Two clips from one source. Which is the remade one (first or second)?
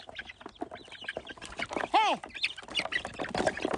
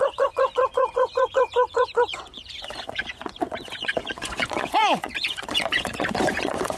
second